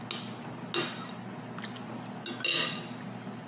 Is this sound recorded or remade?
recorded